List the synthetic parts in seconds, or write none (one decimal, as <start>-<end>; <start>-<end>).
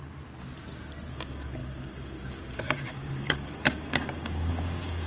1.1-5.1